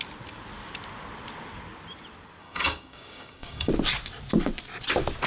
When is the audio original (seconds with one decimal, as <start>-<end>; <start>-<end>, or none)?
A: 0.0-2.4; 3.7-5.3